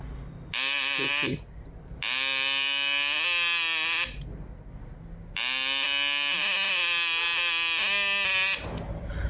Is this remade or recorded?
recorded